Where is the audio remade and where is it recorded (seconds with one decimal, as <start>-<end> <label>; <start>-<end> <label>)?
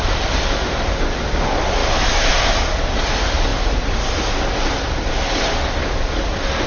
0.0-1.8 recorded; 1.8-2.3 remade; 2.3-6.7 recorded